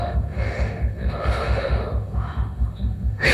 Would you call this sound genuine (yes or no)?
no